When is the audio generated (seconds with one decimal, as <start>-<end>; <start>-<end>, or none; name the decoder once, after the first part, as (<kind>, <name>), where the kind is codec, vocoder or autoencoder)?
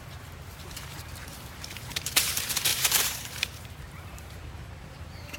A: 0.0-5.4 (vocoder, BigVGAN v2)